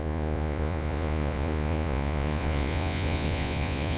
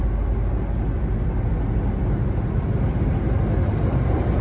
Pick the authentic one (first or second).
second